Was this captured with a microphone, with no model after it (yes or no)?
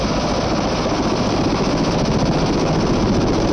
yes